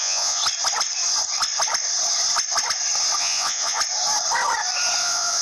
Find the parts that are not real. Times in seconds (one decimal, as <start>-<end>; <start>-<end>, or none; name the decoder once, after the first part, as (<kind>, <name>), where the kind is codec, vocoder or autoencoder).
0.0-0.4 (vocoder, Vocos); 3.2-3.8; 5.0-5.4